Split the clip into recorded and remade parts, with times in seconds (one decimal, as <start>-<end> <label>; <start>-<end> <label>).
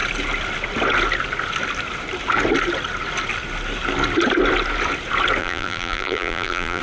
0.0-5.4 recorded; 5.4-6.8 remade